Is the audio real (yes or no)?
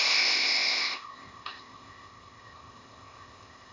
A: no